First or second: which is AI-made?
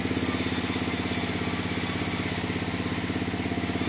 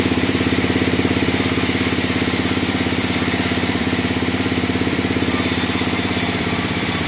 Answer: second